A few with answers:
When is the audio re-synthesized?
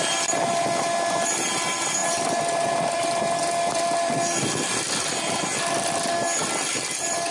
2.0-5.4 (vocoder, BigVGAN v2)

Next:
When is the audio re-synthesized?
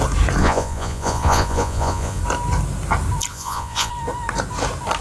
0.4-2.2 (vocoder, Vocos); 3.3-3.9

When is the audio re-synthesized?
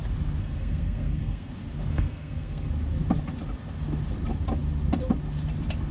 0.4-1.5 (codec, SNAC); 1.9-2.7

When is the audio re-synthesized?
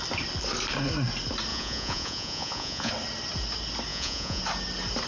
1.5-2.9 (vocoder, Vocos); 3.9-4.4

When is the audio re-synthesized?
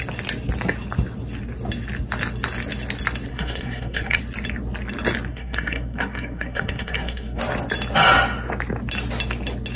3.3-4.2 (codec, SNAC); 5.3-7.4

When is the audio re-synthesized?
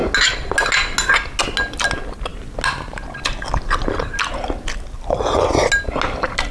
none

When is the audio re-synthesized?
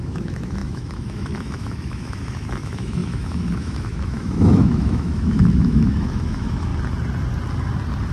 0.0-6.7 (autoencoder, DAC-VAE)